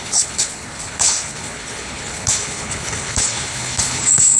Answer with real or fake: fake